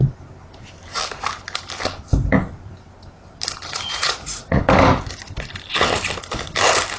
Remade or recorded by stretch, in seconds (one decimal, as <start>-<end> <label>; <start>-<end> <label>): 0.0-3.9 recorded; 3.9-4.6 remade; 4.6-7.0 recorded